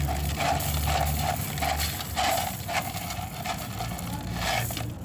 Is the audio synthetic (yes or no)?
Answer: no